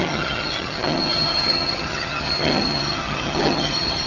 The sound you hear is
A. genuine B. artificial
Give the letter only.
B